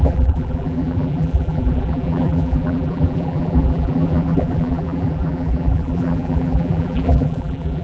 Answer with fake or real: fake